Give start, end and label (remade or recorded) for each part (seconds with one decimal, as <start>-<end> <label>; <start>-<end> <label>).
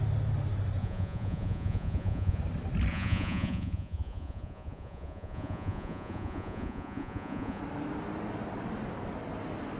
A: 0.0-0.8 recorded; 0.8-2.4 remade; 2.4-2.9 recorded; 2.9-7.6 remade; 7.6-9.8 recorded